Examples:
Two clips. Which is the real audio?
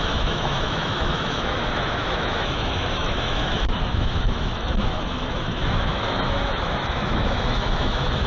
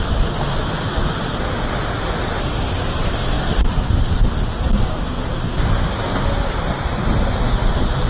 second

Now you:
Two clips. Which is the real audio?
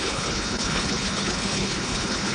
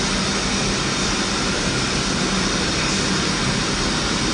second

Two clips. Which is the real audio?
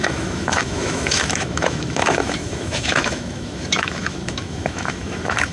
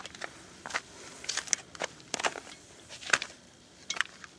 second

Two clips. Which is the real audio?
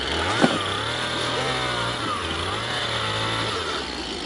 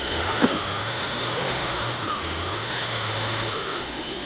first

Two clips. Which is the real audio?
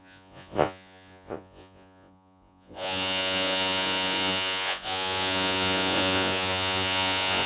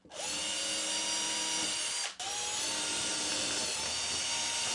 second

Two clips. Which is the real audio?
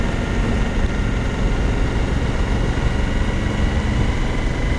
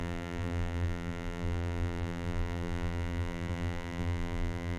first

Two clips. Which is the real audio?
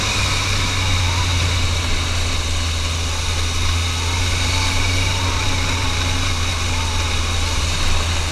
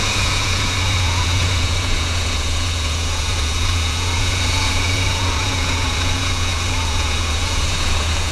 first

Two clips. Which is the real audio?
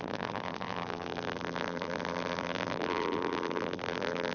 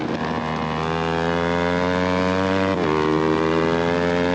second